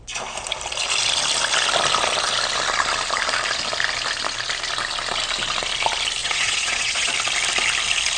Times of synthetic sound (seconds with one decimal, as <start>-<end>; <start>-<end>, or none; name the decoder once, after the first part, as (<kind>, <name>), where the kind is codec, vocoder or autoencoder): 6.2-7.1 (vocoder, Vocos)